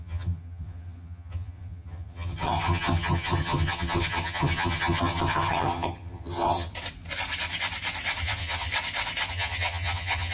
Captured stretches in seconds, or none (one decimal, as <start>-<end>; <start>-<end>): 6.7-8.2; 8.7-9.3